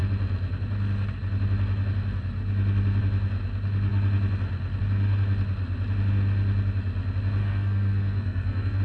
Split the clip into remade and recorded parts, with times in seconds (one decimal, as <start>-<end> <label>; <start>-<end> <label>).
0.0-7.4 recorded; 7.4-8.8 remade